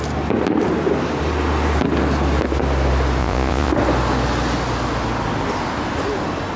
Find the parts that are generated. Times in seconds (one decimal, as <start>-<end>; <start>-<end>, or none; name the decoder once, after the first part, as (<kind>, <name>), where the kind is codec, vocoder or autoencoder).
3.2-3.7 (vocoder, Vocos)